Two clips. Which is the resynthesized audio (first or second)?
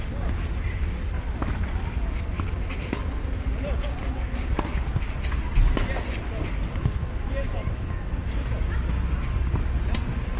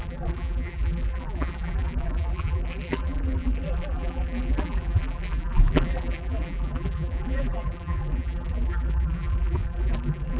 second